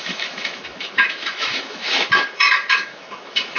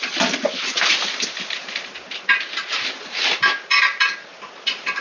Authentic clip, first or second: second